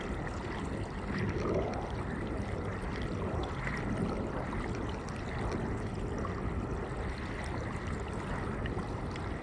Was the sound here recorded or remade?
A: recorded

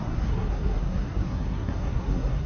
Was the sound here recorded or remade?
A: remade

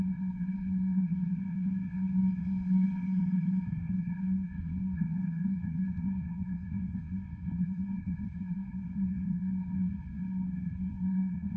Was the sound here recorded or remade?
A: remade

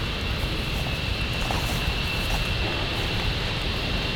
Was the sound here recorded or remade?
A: recorded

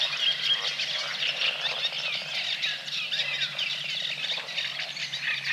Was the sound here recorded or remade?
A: recorded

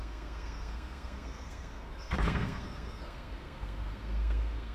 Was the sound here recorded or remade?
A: remade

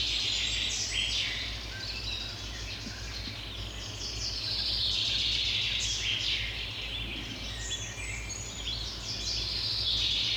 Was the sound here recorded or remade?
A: recorded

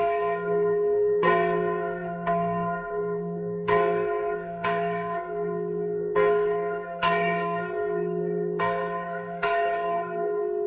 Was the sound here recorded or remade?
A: remade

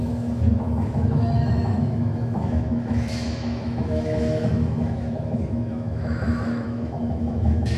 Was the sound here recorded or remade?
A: remade